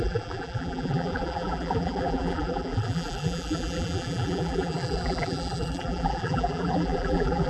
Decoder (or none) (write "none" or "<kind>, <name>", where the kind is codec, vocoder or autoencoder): vocoder, BigVGAN v2